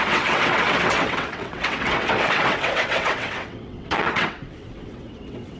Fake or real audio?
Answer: fake